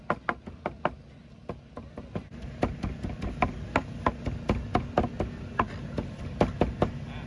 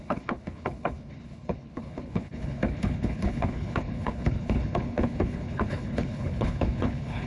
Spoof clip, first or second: second